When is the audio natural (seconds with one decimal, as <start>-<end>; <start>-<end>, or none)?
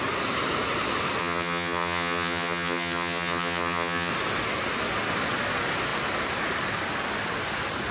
0.0-1.2; 4.1-7.9